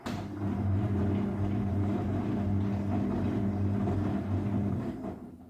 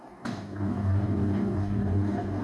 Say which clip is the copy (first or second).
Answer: second